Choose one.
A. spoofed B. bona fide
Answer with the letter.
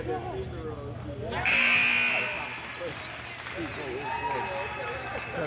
B